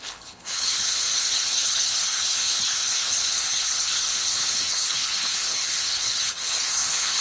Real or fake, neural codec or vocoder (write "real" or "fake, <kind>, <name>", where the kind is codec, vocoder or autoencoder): fake, codec, HILCodec